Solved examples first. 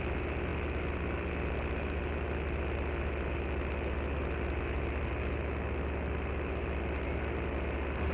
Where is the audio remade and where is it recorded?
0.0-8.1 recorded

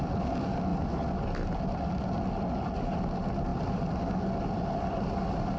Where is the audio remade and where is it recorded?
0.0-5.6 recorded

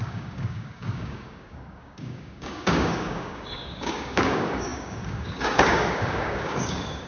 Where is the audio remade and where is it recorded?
0.0-7.1 remade